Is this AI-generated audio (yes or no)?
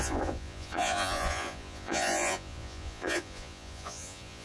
yes